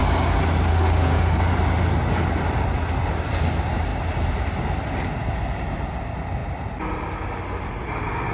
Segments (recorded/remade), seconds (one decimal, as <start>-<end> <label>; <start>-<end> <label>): 0.0-0.7 recorded; 0.7-1.4 remade; 1.4-8.3 recorded